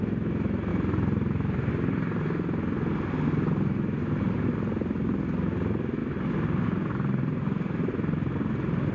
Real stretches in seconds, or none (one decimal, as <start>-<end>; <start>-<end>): 0.0-0.7; 1.7-6.0; 7.9-8.9